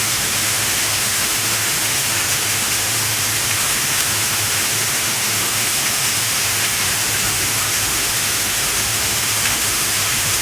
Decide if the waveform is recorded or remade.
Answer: remade